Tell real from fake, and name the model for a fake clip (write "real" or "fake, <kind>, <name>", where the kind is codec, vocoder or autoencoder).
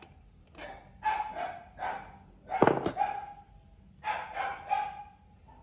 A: real